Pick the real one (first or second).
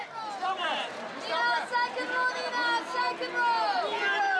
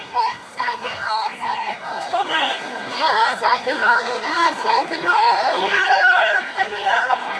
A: first